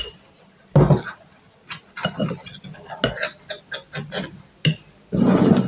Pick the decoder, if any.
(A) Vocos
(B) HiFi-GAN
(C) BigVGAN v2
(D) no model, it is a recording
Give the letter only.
D